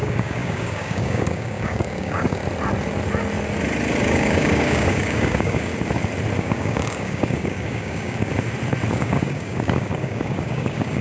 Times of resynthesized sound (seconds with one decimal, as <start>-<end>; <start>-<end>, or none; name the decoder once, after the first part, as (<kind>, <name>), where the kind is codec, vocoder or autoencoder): 0.0-2.4 (codec, DAC); 4.0-5.7; 6.4-8.3; 8.9-11.0